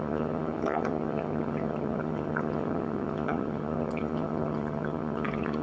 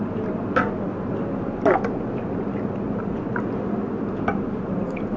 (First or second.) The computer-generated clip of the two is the first